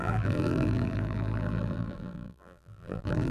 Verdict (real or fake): fake